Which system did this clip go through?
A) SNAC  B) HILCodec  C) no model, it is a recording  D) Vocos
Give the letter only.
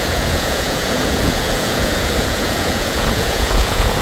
D